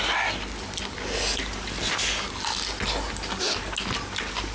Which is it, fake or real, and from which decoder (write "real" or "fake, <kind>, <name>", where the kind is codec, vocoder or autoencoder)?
real